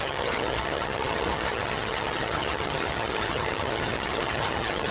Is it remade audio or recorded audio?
remade